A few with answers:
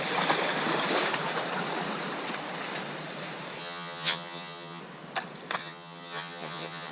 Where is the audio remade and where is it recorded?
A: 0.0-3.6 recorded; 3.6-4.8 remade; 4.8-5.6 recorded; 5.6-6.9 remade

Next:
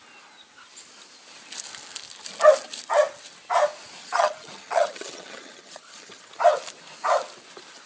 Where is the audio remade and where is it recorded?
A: 0.0-4.0 recorded; 4.0-6.3 remade; 6.3-7.9 recorded

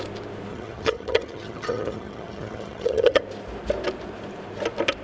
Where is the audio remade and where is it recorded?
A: 0.0-0.5 recorded; 0.5-3.2 remade; 3.2-5.0 recorded

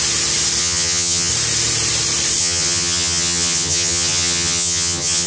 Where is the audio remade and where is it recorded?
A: 0.0-0.6 recorded; 0.6-1.3 remade; 1.3-2.4 recorded; 2.4-5.3 remade

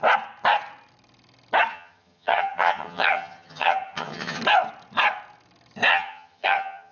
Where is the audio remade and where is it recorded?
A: 0.0-1.7 recorded; 1.7-4.4 remade; 4.4-5.9 recorded; 5.9-6.9 remade